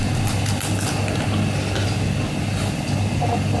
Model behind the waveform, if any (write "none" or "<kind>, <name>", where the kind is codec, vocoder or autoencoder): none